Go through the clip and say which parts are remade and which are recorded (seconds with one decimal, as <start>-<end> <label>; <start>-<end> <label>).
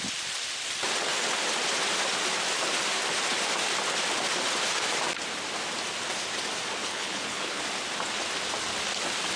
0.0-6.8 recorded; 6.8-7.6 remade; 7.6-9.4 recorded